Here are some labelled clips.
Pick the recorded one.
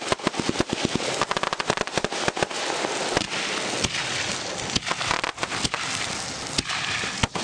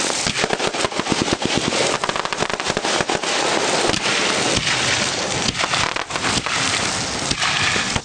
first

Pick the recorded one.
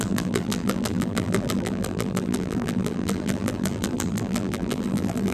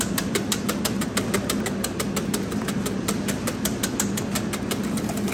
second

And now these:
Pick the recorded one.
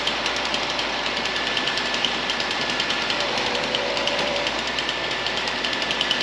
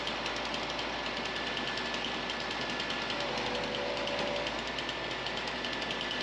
second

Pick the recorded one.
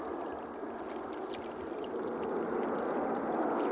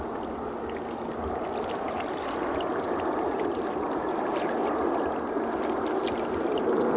first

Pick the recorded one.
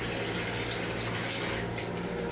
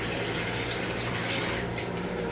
first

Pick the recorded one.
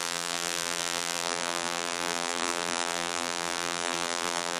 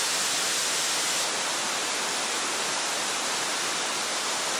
second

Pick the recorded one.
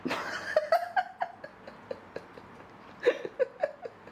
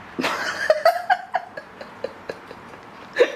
first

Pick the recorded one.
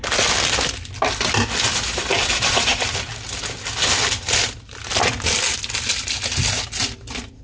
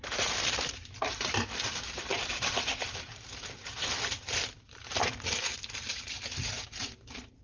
first